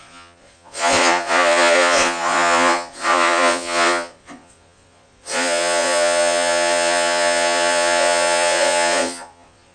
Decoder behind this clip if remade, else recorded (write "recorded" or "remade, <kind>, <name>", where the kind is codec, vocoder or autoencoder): remade, vocoder, Vocos